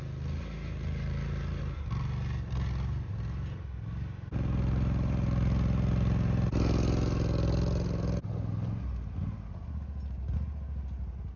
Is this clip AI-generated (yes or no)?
no